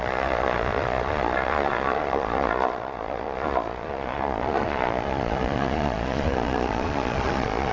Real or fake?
fake